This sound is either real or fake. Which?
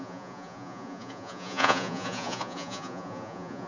fake